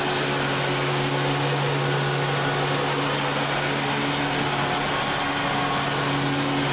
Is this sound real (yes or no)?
yes